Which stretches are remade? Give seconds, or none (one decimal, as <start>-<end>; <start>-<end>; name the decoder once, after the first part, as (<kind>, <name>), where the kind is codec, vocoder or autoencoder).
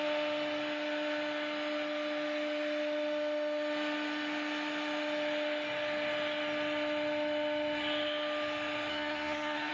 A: 8.9-9.7 (codec, SNAC)